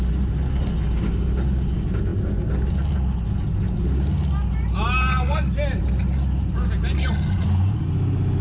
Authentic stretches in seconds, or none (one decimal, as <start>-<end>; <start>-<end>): 0.0-8.4